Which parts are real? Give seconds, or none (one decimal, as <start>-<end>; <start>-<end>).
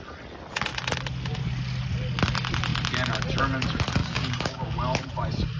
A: 0.0-4.0; 4.7-5.6